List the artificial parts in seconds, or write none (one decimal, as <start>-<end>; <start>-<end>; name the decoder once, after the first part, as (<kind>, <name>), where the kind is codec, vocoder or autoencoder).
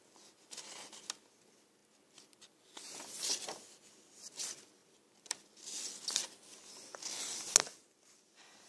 none